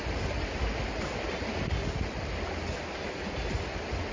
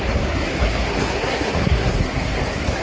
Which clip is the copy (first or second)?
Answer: second